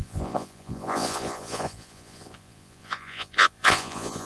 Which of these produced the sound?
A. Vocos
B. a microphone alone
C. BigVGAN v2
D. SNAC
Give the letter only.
A